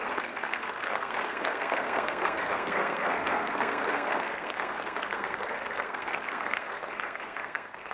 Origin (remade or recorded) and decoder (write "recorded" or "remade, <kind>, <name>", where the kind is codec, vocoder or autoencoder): remade, codec, SNAC